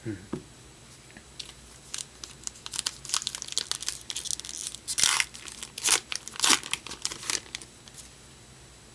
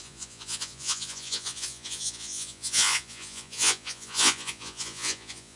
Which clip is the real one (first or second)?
first